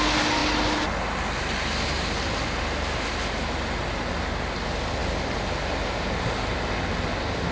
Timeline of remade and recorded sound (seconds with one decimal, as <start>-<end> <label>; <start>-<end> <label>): 0.0-7.5 recorded